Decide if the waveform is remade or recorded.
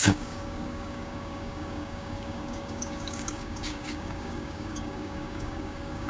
remade